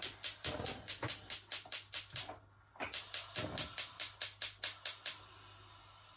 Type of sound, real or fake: real